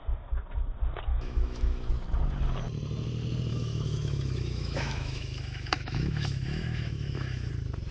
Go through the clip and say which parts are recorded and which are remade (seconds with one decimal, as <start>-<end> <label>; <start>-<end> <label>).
0.0-1.1 recorded; 1.1-1.9 remade; 1.9-3.5 recorded; 3.5-7.5 remade; 7.5-7.9 recorded